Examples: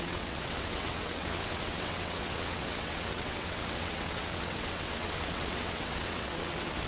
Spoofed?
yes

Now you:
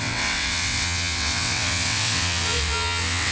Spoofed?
yes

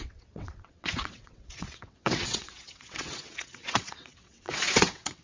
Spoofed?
yes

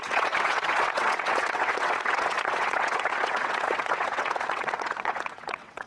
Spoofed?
yes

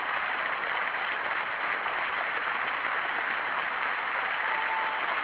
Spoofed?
no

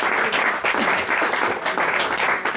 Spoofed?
no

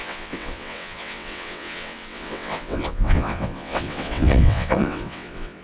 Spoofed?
yes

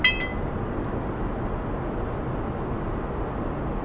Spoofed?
no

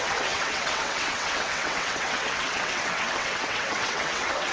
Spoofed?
yes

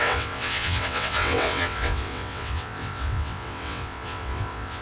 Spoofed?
yes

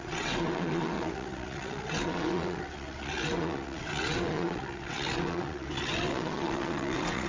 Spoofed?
yes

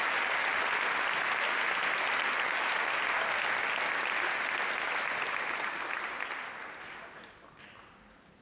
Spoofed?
no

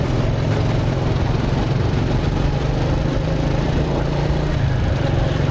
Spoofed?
no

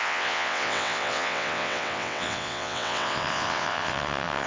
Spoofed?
yes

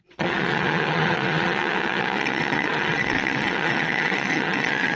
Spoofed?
yes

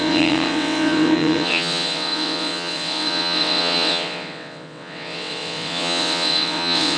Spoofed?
yes